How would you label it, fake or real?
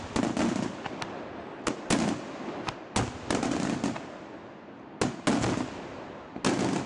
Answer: real